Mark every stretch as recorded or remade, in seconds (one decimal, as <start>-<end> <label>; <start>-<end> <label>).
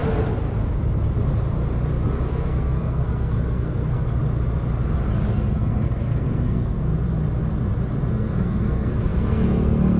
0.0-2.3 recorded; 2.3-4.2 remade; 4.2-5.3 recorded; 5.3-6.9 remade; 6.9-8.1 recorded; 8.1-10.0 remade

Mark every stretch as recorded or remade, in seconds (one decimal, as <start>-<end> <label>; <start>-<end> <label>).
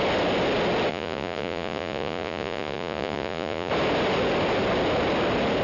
0.0-0.9 recorded; 0.9-3.7 remade; 3.7-5.6 recorded